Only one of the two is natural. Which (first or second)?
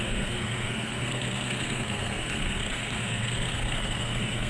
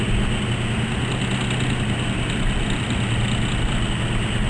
second